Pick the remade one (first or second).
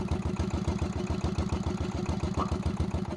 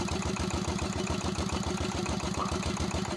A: second